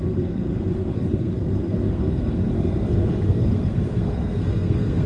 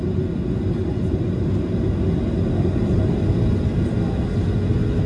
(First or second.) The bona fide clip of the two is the second